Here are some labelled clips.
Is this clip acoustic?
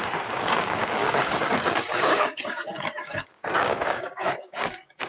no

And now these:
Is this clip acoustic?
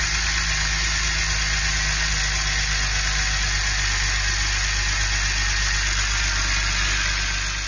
yes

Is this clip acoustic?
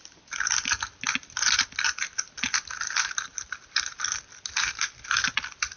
no